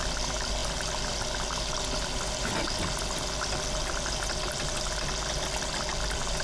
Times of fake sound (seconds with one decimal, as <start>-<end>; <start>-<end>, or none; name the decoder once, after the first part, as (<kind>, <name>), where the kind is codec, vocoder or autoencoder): none